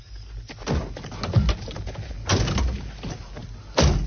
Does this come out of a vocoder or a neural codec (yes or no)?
no